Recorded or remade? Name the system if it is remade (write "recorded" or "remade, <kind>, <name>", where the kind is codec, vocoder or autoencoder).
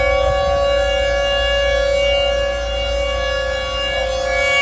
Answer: recorded